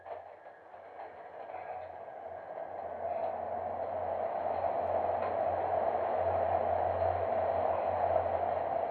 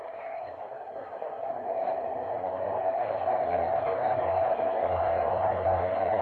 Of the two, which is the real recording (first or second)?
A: first